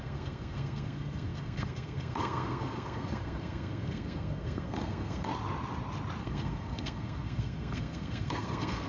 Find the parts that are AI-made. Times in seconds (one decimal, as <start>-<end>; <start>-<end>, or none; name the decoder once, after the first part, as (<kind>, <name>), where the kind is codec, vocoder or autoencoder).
0.0-5.3 (codec, SNAC); 6.2-8.9